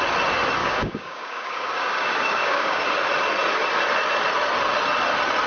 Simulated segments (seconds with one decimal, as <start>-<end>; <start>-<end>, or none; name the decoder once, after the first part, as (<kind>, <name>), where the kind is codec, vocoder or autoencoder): 0.6-2.8 (codec, DAC)